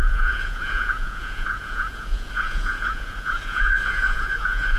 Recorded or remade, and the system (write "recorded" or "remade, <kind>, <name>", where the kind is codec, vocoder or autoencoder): remade, vocoder, Vocos